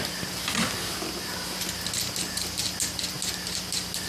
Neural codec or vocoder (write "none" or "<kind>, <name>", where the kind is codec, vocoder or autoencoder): none